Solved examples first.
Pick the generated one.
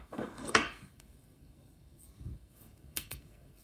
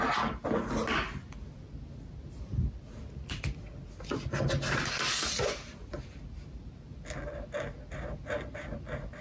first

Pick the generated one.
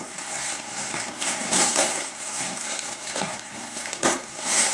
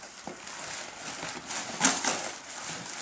first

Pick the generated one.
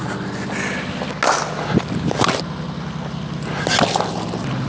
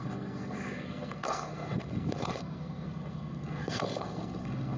second